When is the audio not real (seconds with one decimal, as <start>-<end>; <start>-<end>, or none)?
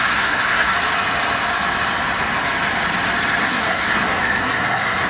0.0-0.7; 3.4-5.1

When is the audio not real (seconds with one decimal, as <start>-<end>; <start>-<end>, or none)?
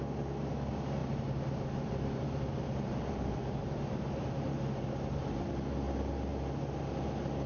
1.0-5.5